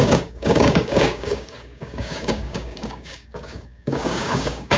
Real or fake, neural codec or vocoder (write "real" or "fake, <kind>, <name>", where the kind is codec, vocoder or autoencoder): fake, codec, DAC